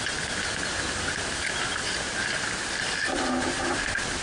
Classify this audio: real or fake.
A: real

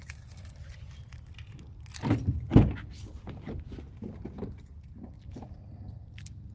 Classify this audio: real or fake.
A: real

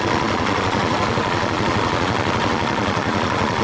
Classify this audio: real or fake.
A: fake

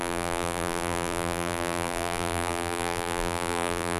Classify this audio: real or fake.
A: fake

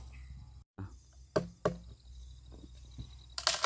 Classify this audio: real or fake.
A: real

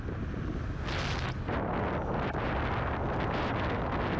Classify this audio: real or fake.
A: real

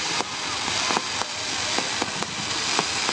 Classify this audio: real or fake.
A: real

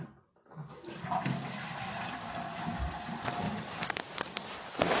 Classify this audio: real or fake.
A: real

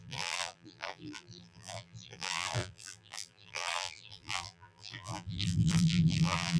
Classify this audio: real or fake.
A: fake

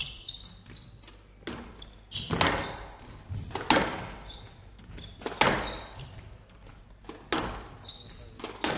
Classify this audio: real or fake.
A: real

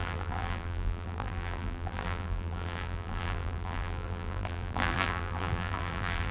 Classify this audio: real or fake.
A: fake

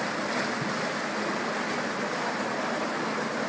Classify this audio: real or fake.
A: real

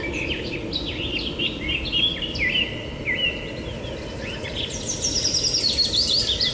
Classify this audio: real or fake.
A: real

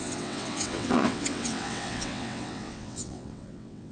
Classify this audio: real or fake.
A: fake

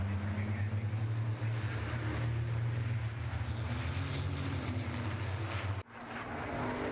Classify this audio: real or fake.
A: real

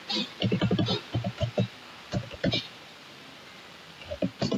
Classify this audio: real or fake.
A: real